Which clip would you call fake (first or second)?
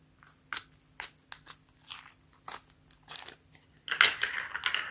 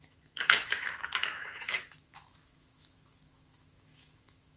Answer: second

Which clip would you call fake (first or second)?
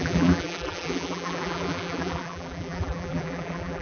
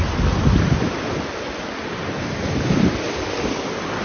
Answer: first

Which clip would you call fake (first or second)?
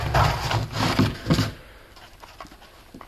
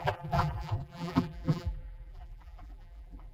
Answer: second